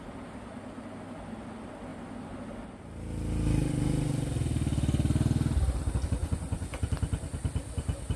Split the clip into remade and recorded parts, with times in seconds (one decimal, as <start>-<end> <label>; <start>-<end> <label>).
0.0-6.2 recorded; 6.2-6.9 remade; 6.9-8.2 recorded